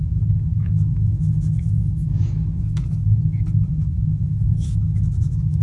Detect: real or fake fake